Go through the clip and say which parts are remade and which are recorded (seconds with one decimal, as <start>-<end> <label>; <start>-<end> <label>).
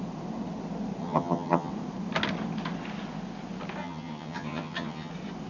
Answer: 0.0-1.0 recorded; 1.0-1.7 remade; 1.7-3.8 recorded; 3.8-5.1 remade; 5.1-5.5 recorded